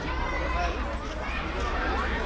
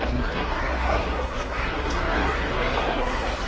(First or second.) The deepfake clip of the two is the second